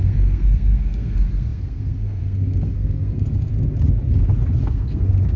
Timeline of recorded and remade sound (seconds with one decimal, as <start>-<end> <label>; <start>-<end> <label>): 0.0-3.5 remade; 3.5-4.6 recorded; 4.6-5.4 remade